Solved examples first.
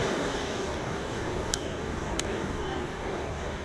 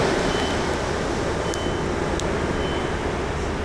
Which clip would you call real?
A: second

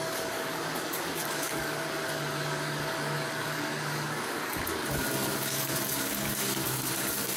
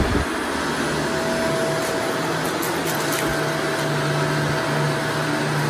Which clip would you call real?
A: second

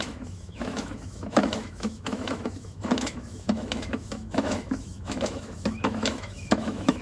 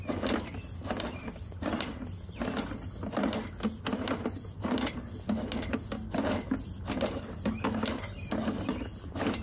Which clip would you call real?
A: second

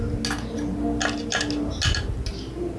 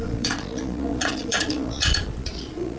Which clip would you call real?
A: first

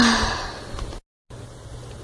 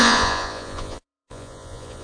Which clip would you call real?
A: first